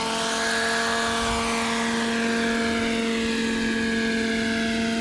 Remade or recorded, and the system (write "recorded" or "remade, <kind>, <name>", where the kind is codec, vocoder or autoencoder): recorded